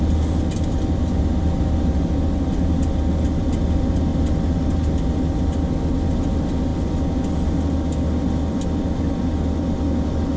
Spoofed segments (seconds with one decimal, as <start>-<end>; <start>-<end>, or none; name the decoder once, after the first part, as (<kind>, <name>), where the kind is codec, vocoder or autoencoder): none